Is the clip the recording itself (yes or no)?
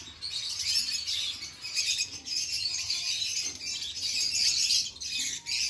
yes